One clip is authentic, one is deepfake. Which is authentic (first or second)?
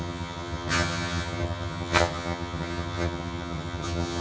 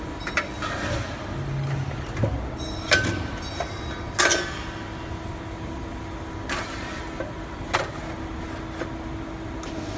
second